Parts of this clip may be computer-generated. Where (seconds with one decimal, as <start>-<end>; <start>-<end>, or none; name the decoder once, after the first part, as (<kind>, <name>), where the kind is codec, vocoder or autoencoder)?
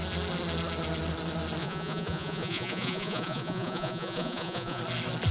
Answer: 1.6-4.8 (vocoder, Vocos)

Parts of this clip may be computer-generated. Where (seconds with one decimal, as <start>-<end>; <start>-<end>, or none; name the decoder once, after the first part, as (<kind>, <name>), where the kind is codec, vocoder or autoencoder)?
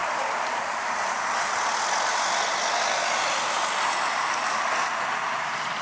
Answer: none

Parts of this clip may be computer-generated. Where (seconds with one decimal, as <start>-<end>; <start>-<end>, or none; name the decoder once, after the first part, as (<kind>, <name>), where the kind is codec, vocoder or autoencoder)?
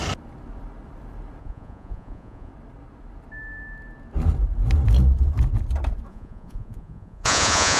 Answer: 1.4-2.5 (vocoder, Vocos); 6.1-7.8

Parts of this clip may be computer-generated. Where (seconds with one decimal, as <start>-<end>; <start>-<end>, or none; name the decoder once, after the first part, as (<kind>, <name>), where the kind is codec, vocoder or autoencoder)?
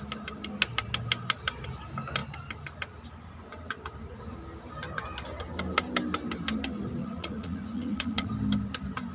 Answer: 7.0-8.3 (vocoder, Vocos)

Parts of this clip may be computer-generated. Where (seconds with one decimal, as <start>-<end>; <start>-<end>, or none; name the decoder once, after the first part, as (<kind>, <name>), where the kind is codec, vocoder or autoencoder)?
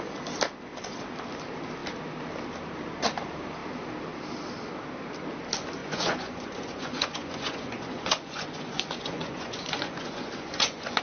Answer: 5.8-11.0 (vocoder, Vocos)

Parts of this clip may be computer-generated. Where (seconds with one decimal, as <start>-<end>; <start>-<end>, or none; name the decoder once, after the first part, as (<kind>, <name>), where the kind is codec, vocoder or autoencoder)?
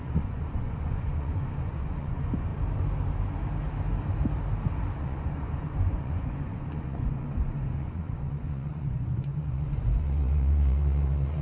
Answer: 0.0-2.5 (vocoder, Vocos); 5.0-11.4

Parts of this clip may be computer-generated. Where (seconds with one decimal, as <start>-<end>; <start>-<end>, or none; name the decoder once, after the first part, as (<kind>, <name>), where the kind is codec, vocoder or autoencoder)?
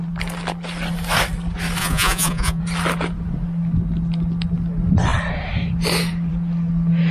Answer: 1.8-2.6 (vocoder, Vocos)